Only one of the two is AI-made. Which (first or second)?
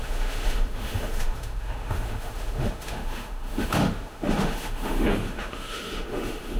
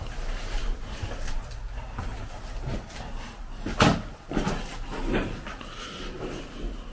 first